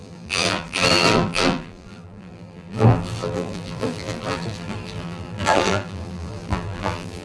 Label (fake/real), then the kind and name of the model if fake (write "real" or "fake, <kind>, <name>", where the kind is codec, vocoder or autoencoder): fake, vocoder, BigVGAN v2